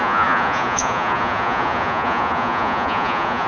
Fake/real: fake